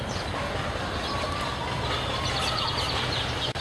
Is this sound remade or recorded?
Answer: recorded